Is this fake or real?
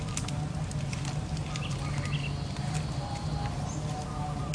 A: real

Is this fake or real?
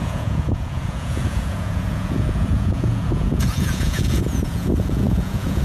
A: fake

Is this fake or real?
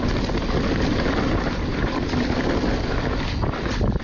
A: real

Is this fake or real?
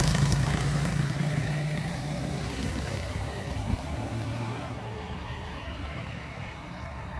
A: fake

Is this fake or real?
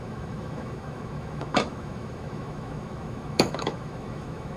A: fake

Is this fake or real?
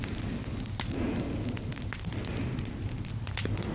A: real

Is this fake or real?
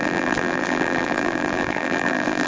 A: fake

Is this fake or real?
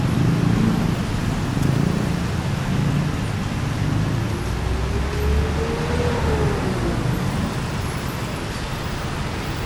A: real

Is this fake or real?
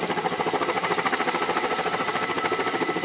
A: real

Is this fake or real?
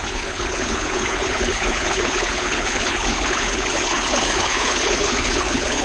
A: fake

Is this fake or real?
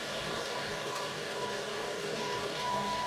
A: fake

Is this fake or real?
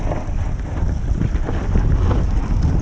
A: real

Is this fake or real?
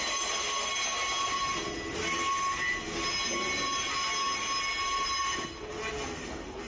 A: real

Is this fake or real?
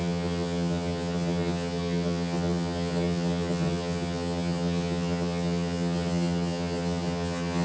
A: fake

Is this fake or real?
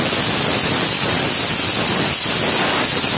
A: real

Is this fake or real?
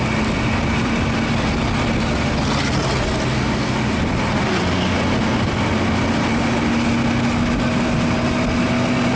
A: real